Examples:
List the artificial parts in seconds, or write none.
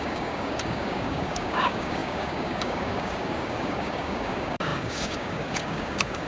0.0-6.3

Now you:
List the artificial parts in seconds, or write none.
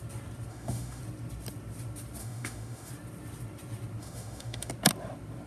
0.5-1.0; 2.2-2.9; 4.0-4.7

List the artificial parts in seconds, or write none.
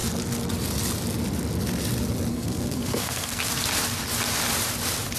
2.3-3.4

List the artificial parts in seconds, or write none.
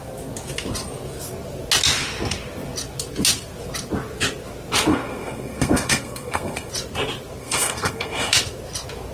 4.9-6.7; 7.4-8.3